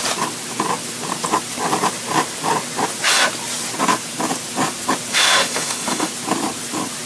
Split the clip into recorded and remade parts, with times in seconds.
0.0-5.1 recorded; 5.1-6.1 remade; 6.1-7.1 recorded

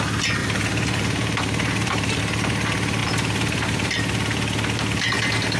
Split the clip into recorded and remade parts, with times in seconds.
0.0-0.4 recorded; 0.4-2.2 remade; 2.2-3.0 recorded; 3.0-4.0 remade; 4.0-5.6 recorded

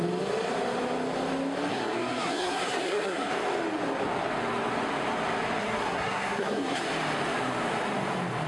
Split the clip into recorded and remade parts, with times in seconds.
0.0-1.7 recorded; 1.7-3.3 remade; 3.3-5.6 recorded; 5.6-6.8 remade; 6.8-8.5 recorded

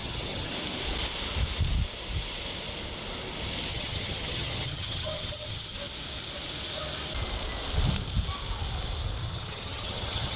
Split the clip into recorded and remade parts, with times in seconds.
0.0-0.5 remade; 0.5-3.7 recorded; 3.7-5.8 remade; 5.8-9.2 recorded; 9.2-10.4 remade

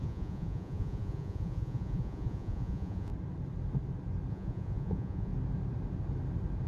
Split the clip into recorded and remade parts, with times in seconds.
0.0-3.1 remade; 3.1-4.3 recorded; 4.3-5.3 remade; 5.3-6.7 recorded

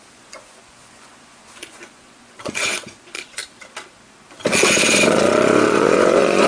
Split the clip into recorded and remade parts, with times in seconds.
0.0-3.4 remade; 3.4-5.1 recorded; 5.1-6.5 remade

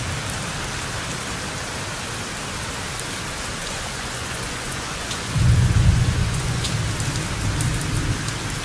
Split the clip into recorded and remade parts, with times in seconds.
0.0-3.6 recorded; 3.6-6.7 remade; 6.7-8.6 recorded

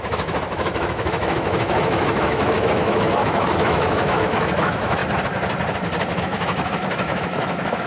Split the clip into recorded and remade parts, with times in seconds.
0.0-5.0 remade; 5.0-6.2 recorded; 6.2-7.9 remade